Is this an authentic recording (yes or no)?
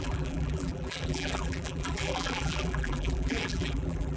no